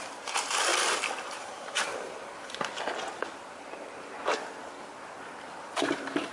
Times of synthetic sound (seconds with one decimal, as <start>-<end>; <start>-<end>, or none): 0.0-0.7; 1.3-1.9; 5.7-6.3